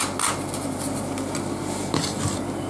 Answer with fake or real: real